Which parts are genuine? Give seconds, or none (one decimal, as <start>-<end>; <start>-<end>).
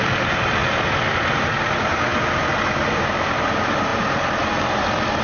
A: 0.6-1.3; 2.1-3.0